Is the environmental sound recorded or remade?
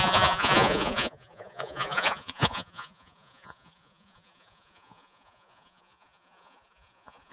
remade